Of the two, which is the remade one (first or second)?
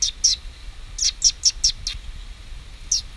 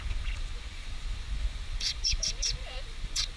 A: second